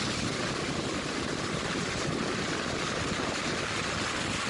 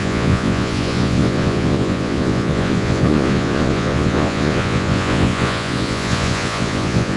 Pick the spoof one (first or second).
second